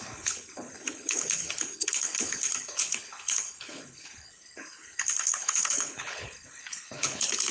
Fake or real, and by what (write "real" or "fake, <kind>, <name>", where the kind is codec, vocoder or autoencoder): fake, codec, HILCodec